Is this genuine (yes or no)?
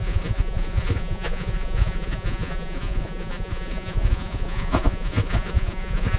no